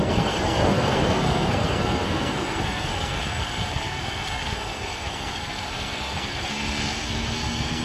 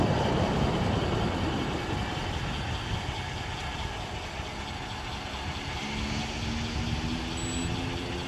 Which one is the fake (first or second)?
first